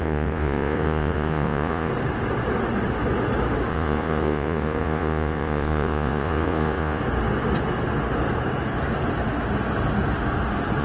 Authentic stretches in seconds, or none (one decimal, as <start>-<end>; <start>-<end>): 1.9-3.7; 7.0-10.8